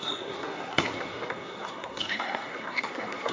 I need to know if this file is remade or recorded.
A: remade